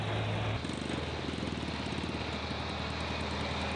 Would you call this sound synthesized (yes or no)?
no